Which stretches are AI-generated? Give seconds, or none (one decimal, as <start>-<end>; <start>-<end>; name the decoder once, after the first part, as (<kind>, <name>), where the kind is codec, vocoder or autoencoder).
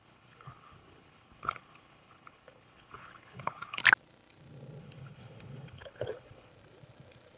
0.0-3.8 (codec, HILCodec); 4.8-6.5